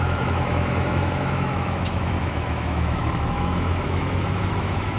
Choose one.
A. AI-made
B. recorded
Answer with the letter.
A